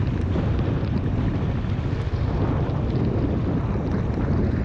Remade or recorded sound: recorded